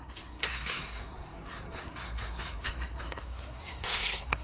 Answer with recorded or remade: remade